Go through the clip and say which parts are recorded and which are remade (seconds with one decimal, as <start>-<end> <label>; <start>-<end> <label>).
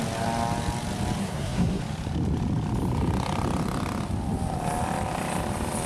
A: 0.0-1.2 recorded; 1.2-1.8 remade; 1.8-5.9 recorded